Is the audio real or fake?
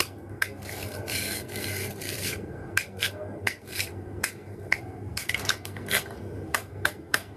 fake